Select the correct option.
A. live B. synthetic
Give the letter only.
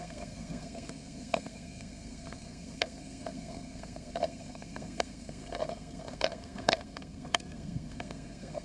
B